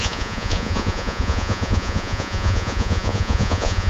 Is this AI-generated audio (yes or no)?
yes